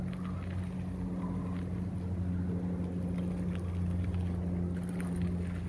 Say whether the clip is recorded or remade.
recorded